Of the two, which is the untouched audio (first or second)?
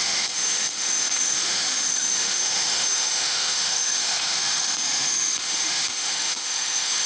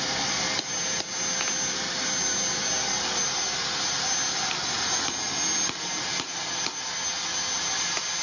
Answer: second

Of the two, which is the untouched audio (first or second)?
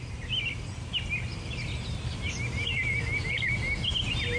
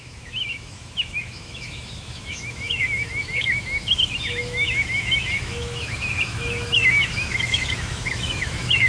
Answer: first